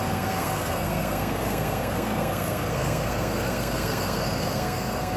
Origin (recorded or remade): remade